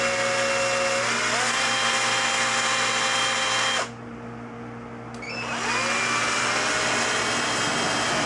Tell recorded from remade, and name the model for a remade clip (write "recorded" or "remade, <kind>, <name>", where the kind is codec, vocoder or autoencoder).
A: recorded